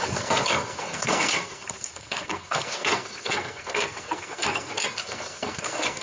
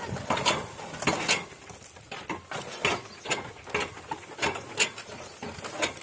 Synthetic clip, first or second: first